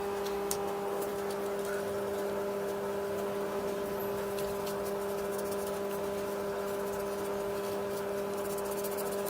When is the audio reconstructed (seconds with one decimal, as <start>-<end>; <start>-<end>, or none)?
none